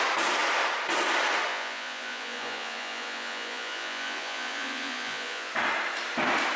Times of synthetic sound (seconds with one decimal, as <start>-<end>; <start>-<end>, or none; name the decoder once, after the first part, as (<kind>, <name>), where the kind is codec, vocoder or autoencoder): 1.5-5.5 (vocoder, Vocos)